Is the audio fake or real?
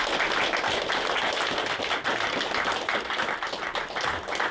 real